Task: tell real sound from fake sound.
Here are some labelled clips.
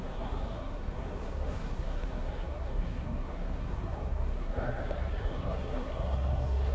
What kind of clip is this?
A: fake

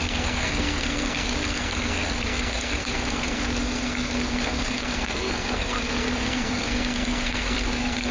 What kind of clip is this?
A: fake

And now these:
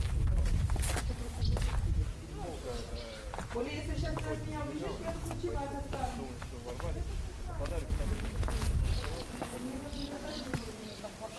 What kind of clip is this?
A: real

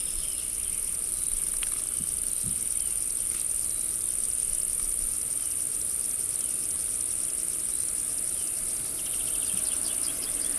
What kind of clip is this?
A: real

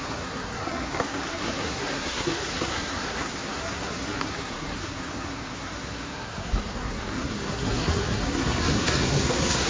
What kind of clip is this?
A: fake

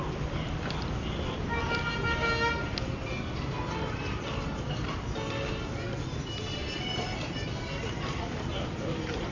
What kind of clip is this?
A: real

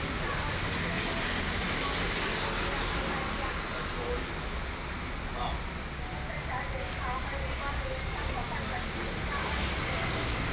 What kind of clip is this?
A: real